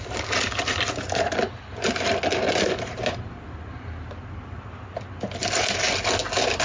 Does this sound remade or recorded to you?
recorded